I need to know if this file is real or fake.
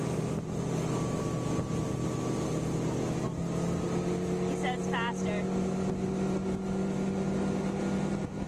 real